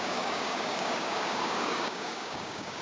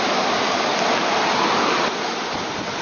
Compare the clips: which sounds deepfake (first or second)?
first